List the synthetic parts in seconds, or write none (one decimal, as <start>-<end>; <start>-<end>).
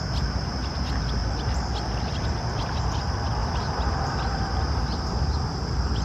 none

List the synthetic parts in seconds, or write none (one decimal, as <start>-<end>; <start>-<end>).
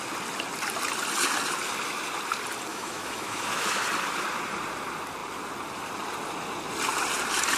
2.7-3.8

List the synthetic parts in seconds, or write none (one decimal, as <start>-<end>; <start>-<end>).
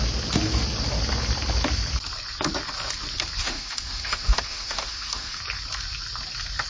3.4-5.4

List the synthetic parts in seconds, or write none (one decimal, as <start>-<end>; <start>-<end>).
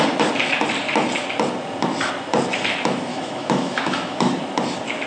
3.1-4.4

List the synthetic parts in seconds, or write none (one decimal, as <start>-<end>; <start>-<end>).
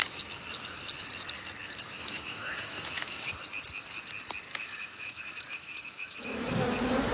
2.0-3.3; 4.5-6.5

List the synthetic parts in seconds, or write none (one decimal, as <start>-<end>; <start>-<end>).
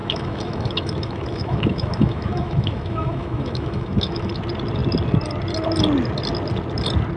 0.0-4.3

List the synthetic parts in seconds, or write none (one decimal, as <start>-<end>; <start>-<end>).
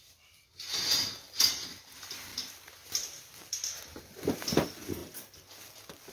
none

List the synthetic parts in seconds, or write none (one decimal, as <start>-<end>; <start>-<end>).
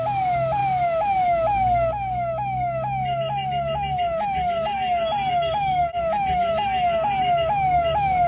none